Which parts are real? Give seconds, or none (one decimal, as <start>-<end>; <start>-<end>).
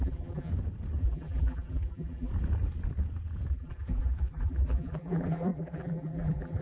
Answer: 0.5-1.0; 2.3-3.5